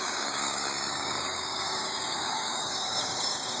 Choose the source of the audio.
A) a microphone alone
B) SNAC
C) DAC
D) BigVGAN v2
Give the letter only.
C